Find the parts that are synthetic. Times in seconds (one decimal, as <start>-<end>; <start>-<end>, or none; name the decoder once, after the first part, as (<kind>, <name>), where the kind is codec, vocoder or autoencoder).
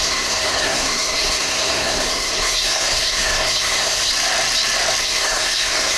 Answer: 0.0-4.1 (codec, SNAC); 5.0-6.0